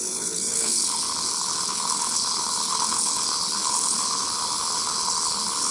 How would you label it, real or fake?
fake